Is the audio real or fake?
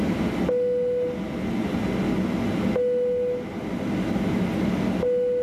real